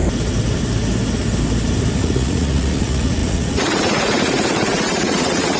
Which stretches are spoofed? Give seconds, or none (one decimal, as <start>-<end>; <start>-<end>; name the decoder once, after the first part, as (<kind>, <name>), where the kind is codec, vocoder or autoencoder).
2.0-5.6 (vocoder, Vocos)

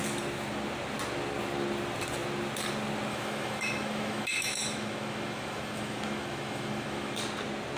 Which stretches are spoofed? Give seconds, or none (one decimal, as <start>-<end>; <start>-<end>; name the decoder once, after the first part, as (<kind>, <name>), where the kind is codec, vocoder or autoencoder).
3.1-7.2 (autoencoder, DAC-VAE)

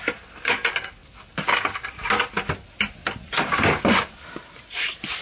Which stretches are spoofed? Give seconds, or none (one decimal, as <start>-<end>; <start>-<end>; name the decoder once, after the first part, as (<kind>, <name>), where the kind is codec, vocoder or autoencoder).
none

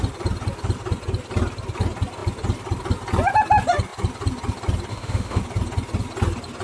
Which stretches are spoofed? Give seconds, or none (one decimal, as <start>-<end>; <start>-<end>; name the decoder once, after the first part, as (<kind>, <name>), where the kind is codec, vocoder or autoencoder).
4.9-5.4 (autoencoder, DAC-VAE)